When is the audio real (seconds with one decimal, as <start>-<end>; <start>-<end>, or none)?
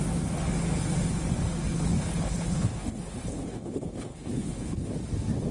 0.0-1.7; 4.9-5.5